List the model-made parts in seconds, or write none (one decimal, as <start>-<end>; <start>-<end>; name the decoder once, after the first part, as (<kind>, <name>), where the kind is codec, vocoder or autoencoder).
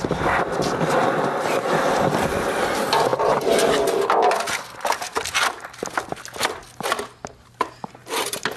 none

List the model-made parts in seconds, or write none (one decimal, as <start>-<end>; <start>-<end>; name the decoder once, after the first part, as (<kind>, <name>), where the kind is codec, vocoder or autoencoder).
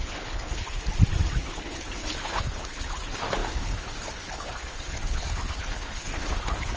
0.0-0.9 (codec, HILCodec); 1.4-6.8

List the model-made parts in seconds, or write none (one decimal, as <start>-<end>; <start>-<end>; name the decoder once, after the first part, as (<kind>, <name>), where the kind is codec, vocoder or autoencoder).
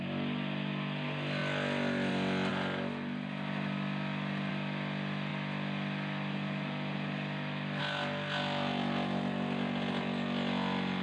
none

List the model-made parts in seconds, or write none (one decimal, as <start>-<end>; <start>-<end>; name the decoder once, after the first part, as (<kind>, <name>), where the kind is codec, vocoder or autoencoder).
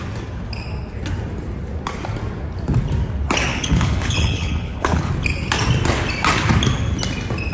3.5-5.1 (codec, HILCodec)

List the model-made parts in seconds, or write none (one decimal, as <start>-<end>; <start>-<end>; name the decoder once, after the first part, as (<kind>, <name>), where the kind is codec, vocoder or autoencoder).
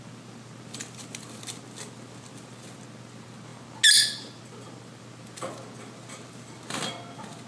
none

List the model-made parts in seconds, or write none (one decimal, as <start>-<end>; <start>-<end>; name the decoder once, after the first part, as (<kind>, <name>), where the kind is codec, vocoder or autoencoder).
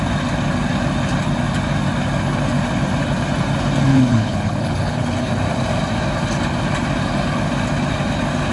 3.9-5.3 (codec, HILCodec)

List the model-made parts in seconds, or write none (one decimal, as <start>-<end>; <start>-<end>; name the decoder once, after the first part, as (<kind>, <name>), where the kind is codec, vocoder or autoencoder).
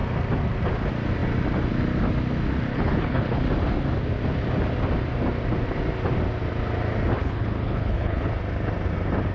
2.7-3.4 (codec, HILCodec); 7.2-8.3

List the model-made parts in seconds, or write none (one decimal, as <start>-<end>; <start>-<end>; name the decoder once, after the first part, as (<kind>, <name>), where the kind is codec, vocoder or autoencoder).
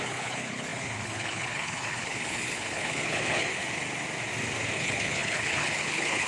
0.0-3.6 (codec, HILCodec); 4.7-6.3